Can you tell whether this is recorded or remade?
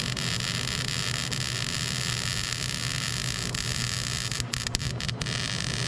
recorded